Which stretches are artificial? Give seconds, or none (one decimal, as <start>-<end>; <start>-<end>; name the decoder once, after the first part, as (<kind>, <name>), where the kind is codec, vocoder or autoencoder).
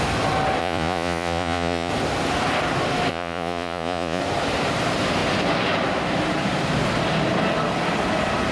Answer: 0.6-1.9 (vocoder, Vocos); 3.1-4.2